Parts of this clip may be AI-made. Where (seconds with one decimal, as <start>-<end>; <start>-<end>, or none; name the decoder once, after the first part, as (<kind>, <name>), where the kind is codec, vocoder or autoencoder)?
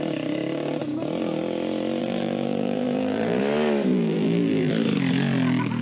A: 2.0-3.4 (vocoder, BigVGAN v2); 3.9-4.7